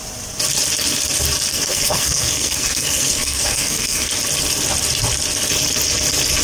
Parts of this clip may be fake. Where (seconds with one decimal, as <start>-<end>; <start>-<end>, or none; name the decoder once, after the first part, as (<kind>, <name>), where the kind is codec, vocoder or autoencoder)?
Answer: 1.5-4.1 (codec, SNAC)